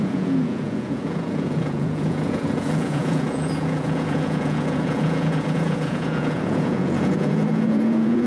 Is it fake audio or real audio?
fake